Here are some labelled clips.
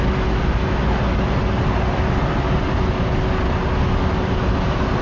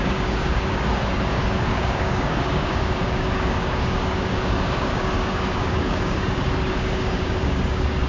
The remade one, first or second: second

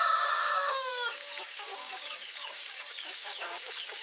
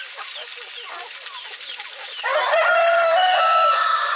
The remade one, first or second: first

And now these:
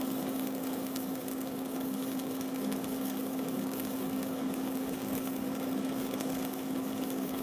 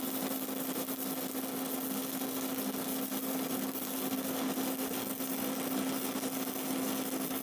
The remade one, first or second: first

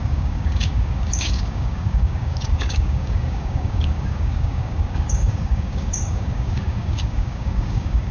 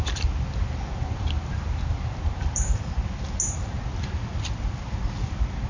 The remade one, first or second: first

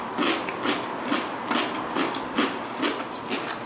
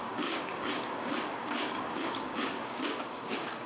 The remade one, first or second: second